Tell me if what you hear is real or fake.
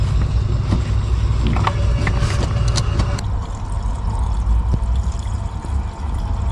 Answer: real